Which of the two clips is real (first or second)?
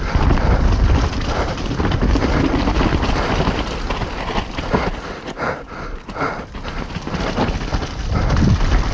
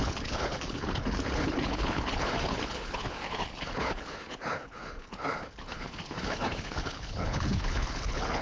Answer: first